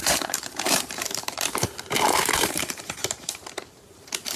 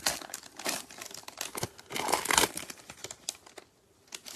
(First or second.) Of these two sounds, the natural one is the second